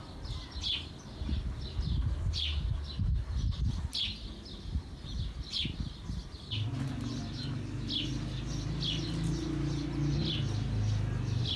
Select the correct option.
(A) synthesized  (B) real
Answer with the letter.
B